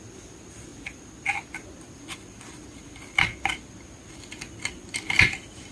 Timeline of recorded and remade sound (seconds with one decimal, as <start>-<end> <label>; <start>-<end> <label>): 0.0-5.7 recorded